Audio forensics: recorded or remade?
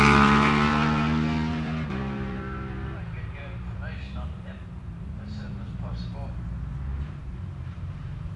remade